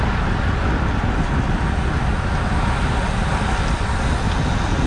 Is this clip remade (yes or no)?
no